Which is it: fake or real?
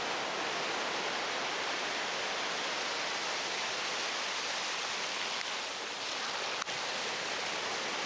real